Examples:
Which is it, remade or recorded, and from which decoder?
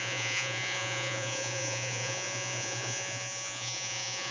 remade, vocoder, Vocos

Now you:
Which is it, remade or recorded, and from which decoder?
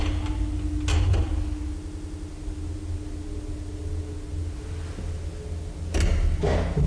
recorded